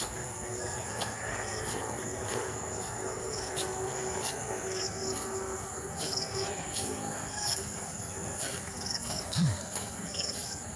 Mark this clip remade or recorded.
remade